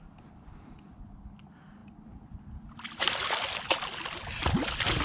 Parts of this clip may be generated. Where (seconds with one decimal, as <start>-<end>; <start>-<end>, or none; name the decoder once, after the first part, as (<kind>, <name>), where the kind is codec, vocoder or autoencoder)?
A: none